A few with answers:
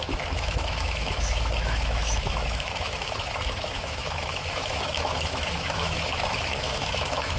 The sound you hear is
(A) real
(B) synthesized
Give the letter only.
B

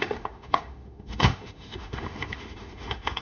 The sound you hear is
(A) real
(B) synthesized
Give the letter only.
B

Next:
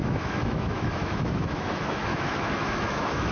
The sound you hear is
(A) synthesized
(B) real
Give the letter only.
A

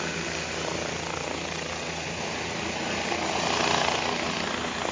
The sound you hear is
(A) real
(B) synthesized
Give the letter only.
A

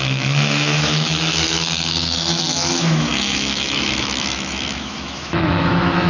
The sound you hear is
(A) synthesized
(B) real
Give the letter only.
A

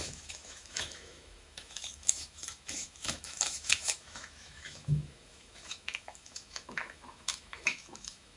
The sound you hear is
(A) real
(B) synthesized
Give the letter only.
B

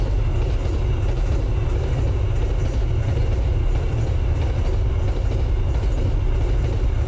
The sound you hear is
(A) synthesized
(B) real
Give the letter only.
B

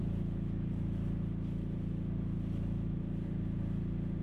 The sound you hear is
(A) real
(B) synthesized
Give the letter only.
A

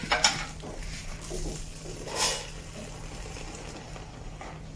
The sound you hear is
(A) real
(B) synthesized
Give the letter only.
A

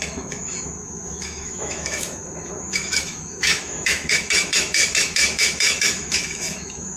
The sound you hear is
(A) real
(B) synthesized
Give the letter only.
B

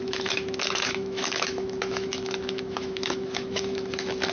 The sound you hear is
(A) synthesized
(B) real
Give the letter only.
A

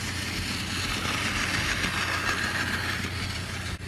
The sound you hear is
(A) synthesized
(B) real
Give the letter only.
B